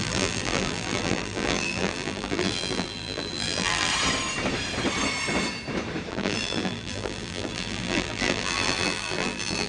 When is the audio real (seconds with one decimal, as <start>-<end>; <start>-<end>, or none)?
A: 3.9-6.1